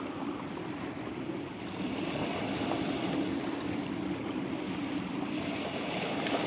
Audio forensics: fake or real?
fake